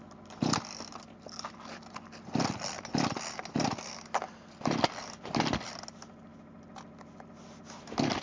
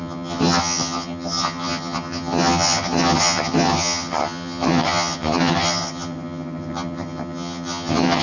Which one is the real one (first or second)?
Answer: first